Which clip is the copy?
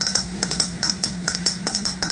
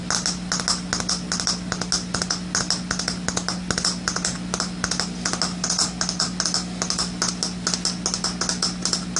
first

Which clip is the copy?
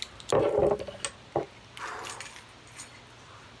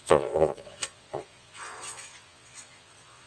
second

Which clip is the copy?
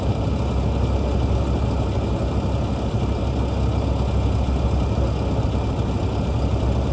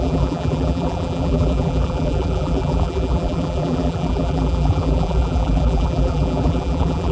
second